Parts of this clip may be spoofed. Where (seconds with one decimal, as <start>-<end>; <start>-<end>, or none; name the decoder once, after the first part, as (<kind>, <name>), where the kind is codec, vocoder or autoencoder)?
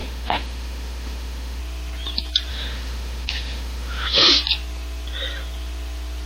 0.0-1.6 (autoencoder, DAC-VAE); 2.5-4.3